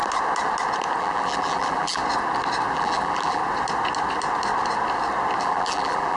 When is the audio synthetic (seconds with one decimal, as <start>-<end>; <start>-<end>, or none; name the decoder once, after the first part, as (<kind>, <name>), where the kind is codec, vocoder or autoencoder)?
1.0-2.0 (vocoder, BigVGAN v2); 2.7-3.4; 5.4-6.2